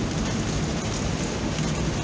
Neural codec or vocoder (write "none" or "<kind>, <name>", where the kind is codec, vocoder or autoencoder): none